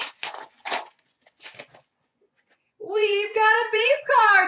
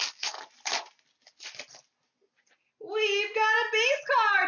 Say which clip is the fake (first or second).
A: first